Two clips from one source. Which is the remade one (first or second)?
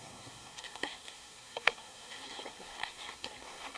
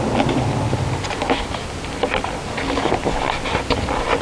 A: first